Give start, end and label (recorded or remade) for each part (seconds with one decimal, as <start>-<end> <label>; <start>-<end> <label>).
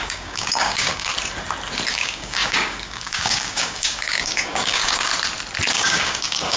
0.0-1.1 remade; 1.1-1.9 recorded; 1.9-5.1 remade; 5.1-5.7 recorded; 5.7-6.6 remade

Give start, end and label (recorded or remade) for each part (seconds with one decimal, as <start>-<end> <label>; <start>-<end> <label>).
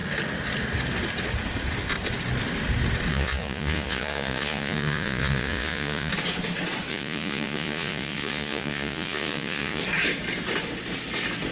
0.0-3.1 recorded; 3.1-6.1 remade; 6.1-6.9 recorded; 6.9-9.8 remade; 9.8-11.5 recorded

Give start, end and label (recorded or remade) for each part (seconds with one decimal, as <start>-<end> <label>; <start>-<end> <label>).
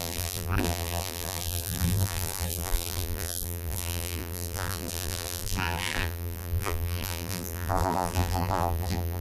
0.0-9.2 remade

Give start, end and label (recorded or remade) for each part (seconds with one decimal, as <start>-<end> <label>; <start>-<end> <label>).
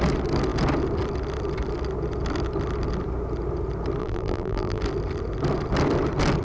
0.0-4.0 recorded; 4.0-4.8 remade; 4.8-6.4 recorded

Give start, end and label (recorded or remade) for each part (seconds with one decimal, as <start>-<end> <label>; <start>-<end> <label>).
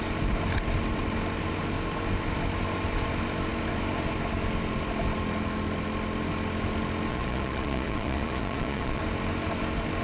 0.0-7.1 recorded; 7.1-9.0 remade; 9.0-10.0 recorded